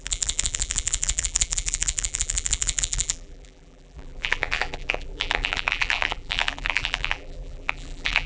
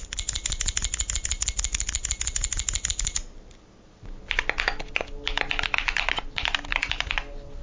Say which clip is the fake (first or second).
first